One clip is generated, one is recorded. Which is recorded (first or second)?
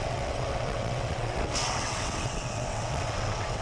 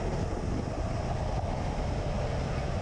second